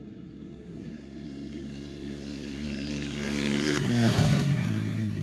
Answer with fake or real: fake